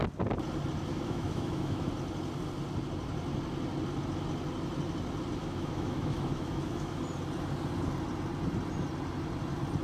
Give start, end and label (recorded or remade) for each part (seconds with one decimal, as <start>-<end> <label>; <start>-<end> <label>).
0.0-0.9 recorded; 0.9-1.8 remade; 1.8-5.4 recorded; 5.4-7.0 remade; 7.0-9.8 recorded